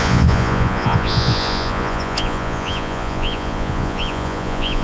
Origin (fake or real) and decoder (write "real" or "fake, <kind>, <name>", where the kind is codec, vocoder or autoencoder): fake, vocoder, Vocos